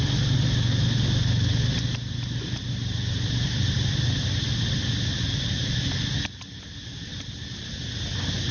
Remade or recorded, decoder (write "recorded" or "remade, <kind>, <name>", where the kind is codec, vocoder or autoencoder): recorded